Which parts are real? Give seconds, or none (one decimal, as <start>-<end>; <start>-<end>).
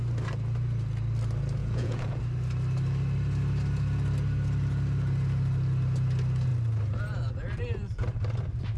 0.0-1.6; 2.2-8.8